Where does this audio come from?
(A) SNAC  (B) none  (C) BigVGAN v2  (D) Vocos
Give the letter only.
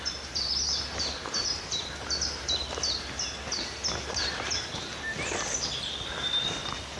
B